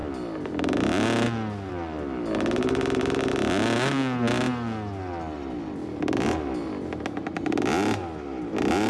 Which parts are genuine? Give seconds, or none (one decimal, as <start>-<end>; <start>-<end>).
0.0-8.9